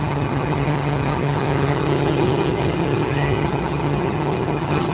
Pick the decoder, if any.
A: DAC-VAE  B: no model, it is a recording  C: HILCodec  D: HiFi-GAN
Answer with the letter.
D